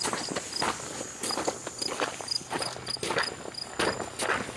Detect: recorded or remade recorded